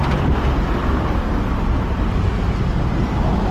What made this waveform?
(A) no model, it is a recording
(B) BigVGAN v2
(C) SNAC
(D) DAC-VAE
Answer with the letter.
A